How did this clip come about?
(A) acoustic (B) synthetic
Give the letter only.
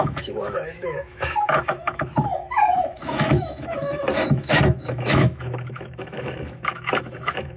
B